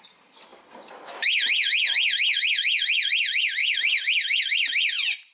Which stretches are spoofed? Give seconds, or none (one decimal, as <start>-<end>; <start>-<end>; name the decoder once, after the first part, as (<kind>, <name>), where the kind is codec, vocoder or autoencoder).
none